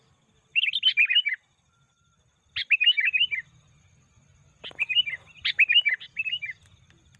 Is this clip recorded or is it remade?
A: recorded